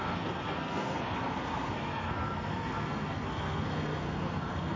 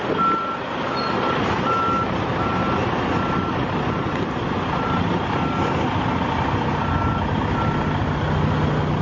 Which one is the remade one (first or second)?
first